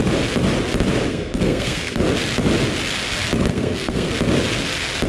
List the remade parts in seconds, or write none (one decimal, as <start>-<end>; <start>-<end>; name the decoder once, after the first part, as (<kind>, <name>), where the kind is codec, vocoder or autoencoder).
1.1-2.0 (codec, SNAC); 3.5-4.1